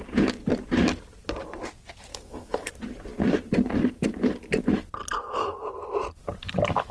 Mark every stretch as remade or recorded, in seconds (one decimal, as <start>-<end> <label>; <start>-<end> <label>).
0.0-2.1 recorded; 2.1-2.7 remade; 2.7-6.9 recorded